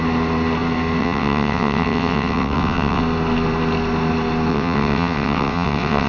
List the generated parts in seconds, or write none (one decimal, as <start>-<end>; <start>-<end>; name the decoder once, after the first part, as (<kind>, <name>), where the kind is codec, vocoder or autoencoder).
1.0-3.0 (vocoder, WaveNeXt); 4.5-6.1